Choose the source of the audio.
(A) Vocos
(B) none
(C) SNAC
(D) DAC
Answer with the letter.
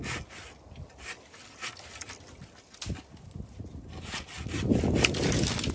B